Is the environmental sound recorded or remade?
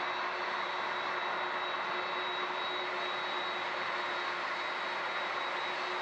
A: recorded